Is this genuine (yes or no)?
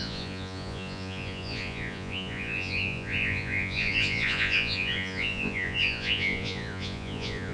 no